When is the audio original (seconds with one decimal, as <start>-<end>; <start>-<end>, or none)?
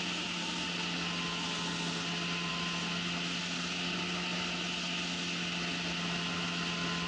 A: 0.0-7.1